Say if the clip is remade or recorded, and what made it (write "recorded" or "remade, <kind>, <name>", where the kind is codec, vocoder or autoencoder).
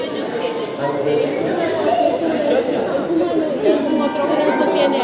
remade, vocoder, BigVGAN v2